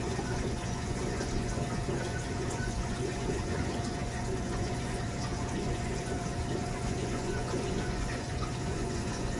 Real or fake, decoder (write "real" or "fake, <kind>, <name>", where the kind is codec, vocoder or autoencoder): fake, vocoder, Vocos